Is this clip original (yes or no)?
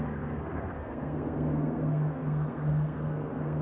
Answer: no